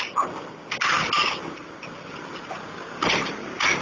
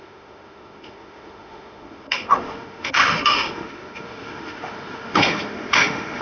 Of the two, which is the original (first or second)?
first